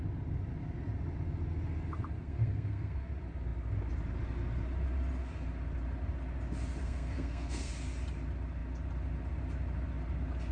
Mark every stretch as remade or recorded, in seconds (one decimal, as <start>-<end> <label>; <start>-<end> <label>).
0.0-2.2 recorded; 2.2-3.1 remade; 3.1-6.8 recorded; 6.8-7.7 remade; 7.7-10.5 recorded